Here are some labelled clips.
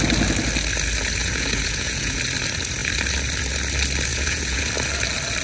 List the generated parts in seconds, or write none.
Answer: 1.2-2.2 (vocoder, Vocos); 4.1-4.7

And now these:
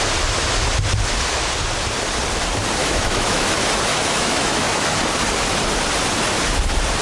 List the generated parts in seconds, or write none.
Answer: 2.8-3.5 (autoencoder, DAC-VAE); 3.9-4.9

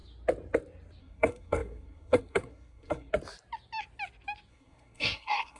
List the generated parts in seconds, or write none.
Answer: 1.0-3.1 (codec, SNAC); 4.5-5.6

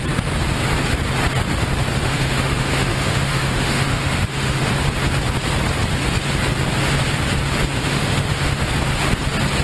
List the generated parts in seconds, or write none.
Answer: 2.0-4.6 (autoencoder, DAC-VAE); 7.8-8.6